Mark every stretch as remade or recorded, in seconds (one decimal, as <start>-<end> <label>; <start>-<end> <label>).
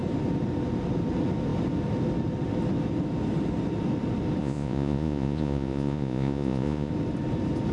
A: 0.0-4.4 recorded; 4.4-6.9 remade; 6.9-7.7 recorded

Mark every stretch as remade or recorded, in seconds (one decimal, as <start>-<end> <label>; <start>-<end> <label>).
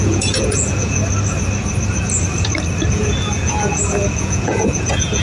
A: 0.0-1.0 remade; 1.0-2.9 recorded; 2.9-5.2 remade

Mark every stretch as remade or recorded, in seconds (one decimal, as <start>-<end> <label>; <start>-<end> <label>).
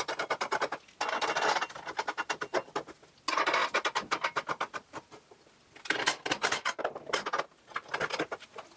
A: 0.0-8.8 recorded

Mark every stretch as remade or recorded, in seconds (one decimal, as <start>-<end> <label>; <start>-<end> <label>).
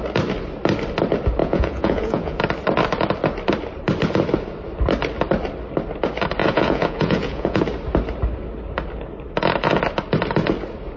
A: 0.0-1.4 recorded; 1.4-2.4 remade; 2.4-6.4 recorded; 6.4-7.6 remade; 7.6-11.0 recorded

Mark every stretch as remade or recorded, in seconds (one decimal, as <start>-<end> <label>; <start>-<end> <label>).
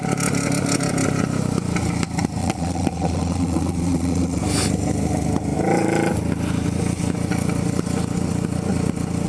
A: 0.0-2.4 recorded; 2.4-4.4 remade; 4.4-9.3 recorded